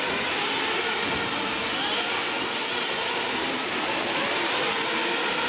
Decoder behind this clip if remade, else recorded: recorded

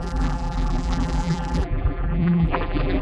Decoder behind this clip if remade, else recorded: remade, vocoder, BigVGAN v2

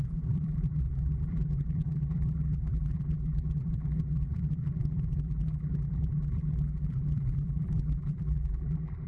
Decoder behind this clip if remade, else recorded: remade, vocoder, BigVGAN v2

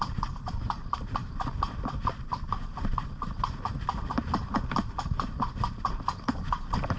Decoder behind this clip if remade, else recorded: remade, vocoder, BigVGAN v2